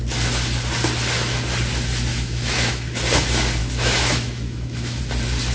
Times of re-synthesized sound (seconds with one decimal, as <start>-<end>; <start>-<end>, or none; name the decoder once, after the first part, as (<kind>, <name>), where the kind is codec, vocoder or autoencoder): 2.1-2.8 (autoencoder, DAC-VAE); 3.6-5.0